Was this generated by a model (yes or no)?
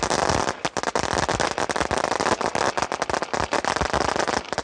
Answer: no